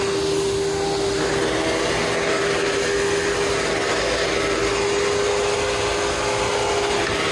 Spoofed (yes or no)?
no